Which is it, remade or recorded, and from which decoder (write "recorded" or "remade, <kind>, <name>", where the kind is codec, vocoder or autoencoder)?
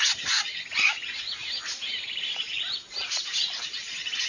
remade, vocoder, BigVGAN v2